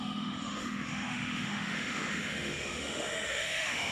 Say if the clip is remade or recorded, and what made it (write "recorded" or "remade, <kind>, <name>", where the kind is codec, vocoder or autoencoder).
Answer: remade, autoencoder, DAC-VAE